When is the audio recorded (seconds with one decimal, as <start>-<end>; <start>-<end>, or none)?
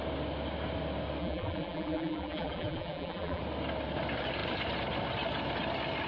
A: 0.0-1.2; 3.4-6.1